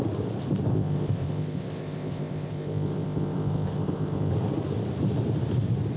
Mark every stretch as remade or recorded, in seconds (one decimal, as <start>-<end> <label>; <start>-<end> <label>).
0.0-0.7 recorded; 0.7-4.3 remade; 4.3-6.0 recorded